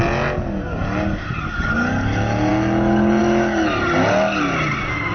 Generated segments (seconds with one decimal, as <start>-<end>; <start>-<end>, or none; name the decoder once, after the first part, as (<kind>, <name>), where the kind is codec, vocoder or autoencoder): none